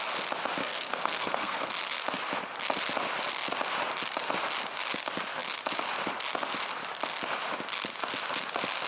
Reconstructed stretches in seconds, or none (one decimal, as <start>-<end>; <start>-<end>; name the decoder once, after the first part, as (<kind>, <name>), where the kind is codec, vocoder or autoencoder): 0.6-1.7 (codec, SNAC)